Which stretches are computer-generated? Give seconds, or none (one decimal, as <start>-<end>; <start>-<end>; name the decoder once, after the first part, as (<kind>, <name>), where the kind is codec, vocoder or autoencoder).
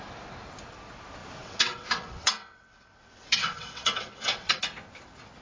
1.4-4.6 (vocoder, WaveNeXt)